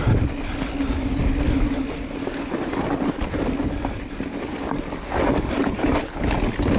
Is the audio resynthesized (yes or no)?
no